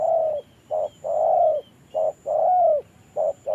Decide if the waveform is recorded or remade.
recorded